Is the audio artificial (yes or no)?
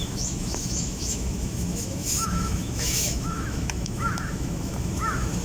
yes